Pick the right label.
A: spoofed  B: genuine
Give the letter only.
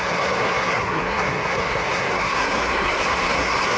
A